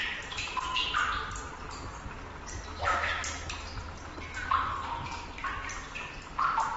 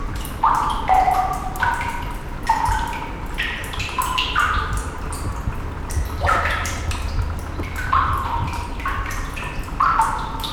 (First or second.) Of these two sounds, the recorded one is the first